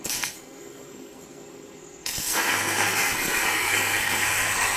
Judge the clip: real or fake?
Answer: fake